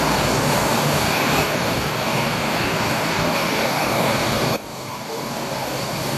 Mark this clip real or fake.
fake